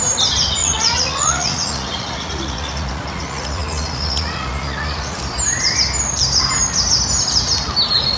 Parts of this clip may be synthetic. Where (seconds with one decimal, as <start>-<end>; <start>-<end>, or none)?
0.6-5.2